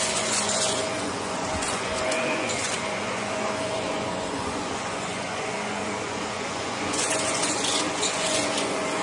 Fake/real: fake